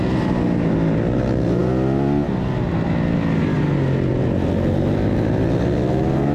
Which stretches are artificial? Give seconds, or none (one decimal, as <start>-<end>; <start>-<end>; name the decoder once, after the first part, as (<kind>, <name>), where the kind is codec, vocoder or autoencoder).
none

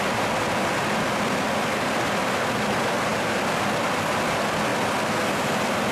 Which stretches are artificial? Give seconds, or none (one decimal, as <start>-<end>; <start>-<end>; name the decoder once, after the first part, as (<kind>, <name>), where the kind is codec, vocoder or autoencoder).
none